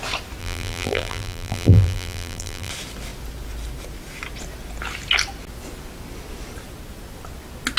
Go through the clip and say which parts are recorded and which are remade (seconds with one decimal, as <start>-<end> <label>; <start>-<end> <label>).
0.0-0.4 recorded; 0.4-2.7 remade; 2.7-7.8 recorded